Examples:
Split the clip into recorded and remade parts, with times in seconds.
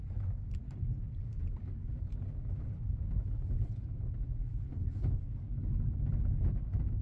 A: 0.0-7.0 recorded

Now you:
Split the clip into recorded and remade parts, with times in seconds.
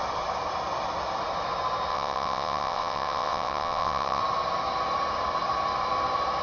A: 0.0-1.9 recorded; 1.9-4.2 remade; 4.2-6.4 recorded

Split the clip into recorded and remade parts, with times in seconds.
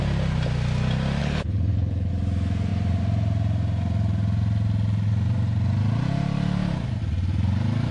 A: 0.0-1.2 recorded; 1.2-2.1 remade; 2.1-7.9 recorded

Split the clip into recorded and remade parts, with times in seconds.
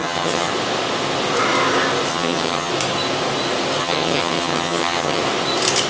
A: 0.0-0.5 remade; 0.5-2.1 recorded; 2.1-2.7 remade; 2.7-3.8 recorded; 3.8-5.2 remade; 5.2-5.9 recorded